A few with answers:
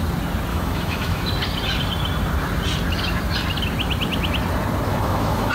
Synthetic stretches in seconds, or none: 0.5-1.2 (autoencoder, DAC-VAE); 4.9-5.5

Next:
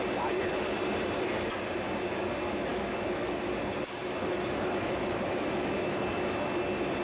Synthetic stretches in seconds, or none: 2.7-3.4 (autoencoder, DAC-VAE); 4.0-6.0

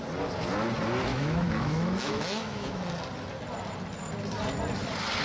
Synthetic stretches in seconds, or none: 1.1-2.8 (autoencoder, DAC-VAE)

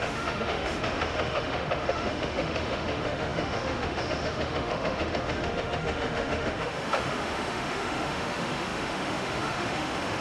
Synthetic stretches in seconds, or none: 0.0-10.2 (autoencoder, DAC-VAE)